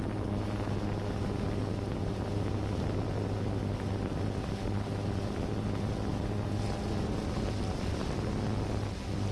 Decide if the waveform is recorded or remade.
recorded